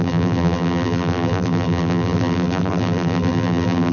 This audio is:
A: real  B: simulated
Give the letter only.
B